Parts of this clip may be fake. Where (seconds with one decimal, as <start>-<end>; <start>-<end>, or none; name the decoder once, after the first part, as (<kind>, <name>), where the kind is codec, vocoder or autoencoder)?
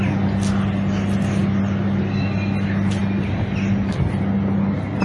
none